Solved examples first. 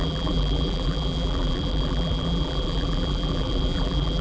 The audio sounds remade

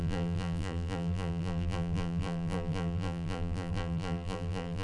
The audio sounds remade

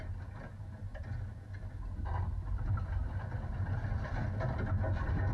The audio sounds recorded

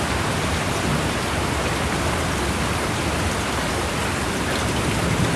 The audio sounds recorded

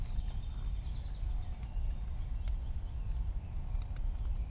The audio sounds recorded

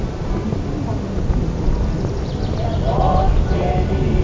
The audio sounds recorded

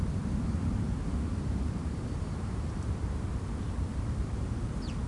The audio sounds remade